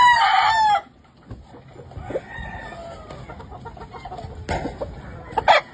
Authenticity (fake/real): real